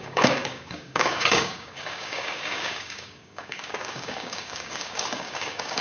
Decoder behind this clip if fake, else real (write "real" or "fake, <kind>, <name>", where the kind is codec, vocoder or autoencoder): fake, codec, DAC